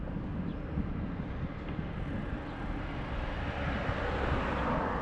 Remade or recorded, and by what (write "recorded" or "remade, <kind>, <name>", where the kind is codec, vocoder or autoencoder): recorded